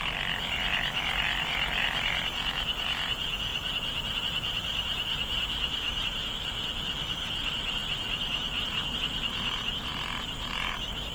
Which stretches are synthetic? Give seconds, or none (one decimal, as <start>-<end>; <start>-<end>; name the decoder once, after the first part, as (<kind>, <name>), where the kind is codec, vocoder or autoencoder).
none